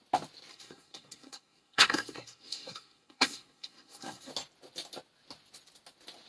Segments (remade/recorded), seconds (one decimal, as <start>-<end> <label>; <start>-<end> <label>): 0.0-0.5 recorded; 0.5-4.3 remade; 4.3-6.3 recorded